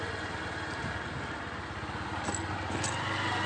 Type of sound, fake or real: real